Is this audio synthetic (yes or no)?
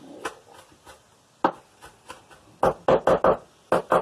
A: no